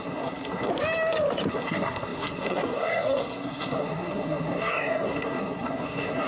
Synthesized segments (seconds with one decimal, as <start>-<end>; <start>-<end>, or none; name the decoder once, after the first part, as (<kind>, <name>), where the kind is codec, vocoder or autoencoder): 0.0-0.7 (codec, SNAC); 1.5-6.3